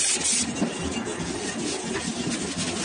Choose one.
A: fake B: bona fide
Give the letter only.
B